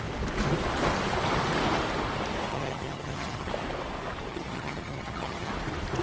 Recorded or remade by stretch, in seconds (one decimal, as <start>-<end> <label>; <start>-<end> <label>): 0.0-2.5 recorded; 2.5-3.5 remade; 3.5-4.3 recorded; 4.3-5.5 remade; 5.5-6.0 recorded